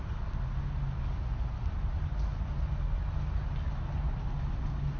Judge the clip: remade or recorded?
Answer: recorded